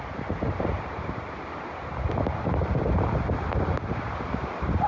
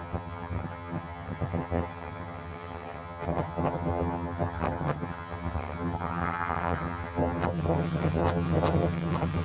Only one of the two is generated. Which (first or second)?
second